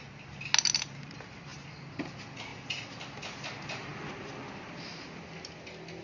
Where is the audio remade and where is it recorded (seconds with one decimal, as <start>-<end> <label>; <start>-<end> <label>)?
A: 0.0-6.0 recorded

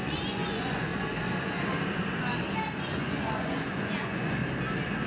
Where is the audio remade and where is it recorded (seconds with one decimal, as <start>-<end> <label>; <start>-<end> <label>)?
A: 0.0-0.9 remade; 0.9-2.8 recorded; 2.8-4.4 remade; 4.4-5.1 recorded